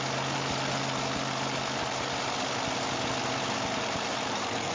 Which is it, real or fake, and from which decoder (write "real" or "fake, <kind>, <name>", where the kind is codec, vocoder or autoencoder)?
real